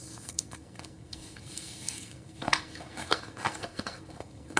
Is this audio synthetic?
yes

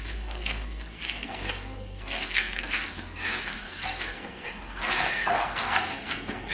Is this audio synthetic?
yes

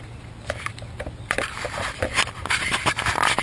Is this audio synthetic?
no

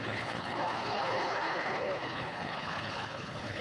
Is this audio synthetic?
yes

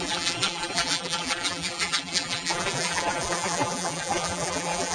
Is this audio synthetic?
yes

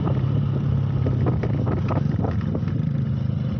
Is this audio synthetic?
no